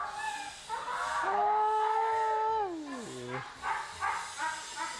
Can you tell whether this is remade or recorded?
recorded